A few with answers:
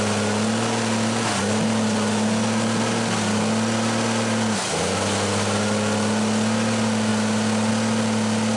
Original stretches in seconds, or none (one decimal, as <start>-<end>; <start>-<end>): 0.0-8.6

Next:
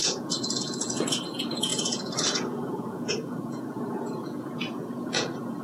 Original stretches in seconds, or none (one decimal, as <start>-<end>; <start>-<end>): none

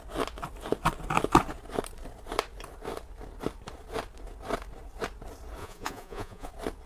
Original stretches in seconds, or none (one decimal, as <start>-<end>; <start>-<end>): 0.0-5.6; 6.5-6.9

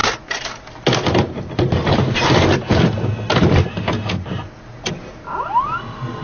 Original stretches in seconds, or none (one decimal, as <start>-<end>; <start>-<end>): 0.0-6.2

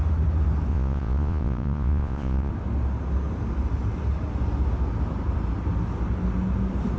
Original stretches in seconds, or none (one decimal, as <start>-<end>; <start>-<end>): 0.0-0.7; 2.5-7.0

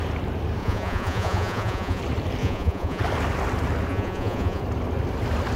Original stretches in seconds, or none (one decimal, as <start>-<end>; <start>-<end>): 0.0-0.6; 2.0-2.4; 3.0-3.9; 4.6-5.6

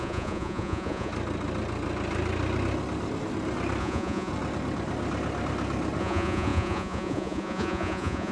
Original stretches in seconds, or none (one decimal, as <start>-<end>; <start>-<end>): 1.1-3.8; 4.3-6.0